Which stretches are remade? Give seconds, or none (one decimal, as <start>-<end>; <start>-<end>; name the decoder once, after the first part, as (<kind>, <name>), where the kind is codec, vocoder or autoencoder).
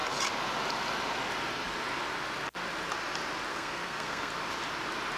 3.5-4.3 (codec, SNAC)